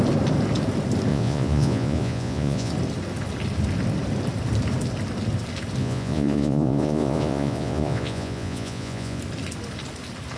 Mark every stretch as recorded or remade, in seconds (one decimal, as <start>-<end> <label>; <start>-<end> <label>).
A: 0.0-1.1 recorded; 1.1-2.7 remade; 2.7-5.8 recorded; 5.8-9.2 remade; 9.2-10.4 recorded